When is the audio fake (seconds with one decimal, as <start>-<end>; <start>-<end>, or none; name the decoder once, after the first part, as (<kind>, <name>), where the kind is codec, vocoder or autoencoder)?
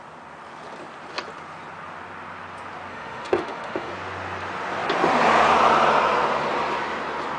2.9-3.9 (autoencoder, DAC-VAE)